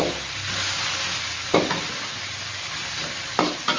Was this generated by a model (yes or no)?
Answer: no